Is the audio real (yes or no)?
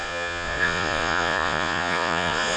no